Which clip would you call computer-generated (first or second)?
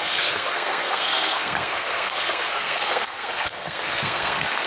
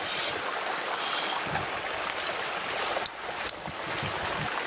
first